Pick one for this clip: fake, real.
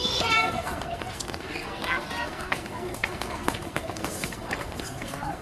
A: fake